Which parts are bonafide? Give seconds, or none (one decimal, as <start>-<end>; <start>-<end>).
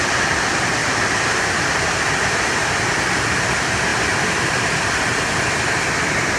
0.0-0.8; 1.5-6.4